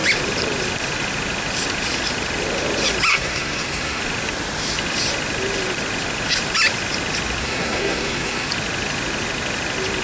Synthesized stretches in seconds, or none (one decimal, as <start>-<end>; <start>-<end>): 3.1-4.0; 7.4-8.5